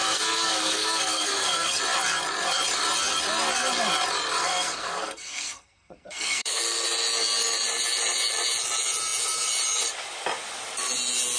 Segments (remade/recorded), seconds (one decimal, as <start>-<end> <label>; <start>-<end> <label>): 0.0-1.8 remade; 1.8-4.4 recorded; 4.4-6.6 remade; 6.6-11.4 recorded